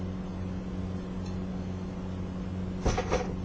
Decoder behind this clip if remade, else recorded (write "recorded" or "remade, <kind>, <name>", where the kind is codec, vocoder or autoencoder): recorded